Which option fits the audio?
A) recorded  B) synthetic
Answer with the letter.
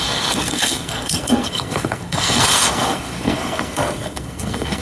B